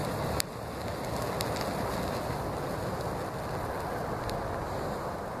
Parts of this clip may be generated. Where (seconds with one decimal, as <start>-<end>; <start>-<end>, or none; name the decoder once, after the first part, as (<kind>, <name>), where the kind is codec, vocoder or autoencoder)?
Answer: none